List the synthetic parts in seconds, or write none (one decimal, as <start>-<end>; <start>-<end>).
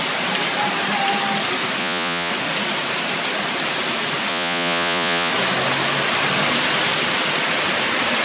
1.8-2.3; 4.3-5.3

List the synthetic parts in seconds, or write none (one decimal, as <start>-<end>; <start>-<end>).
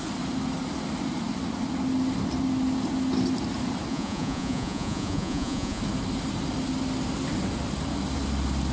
3.9-5.8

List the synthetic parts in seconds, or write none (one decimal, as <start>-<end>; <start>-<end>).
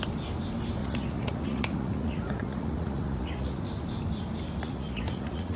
0.8-3.6; 4.6-5.6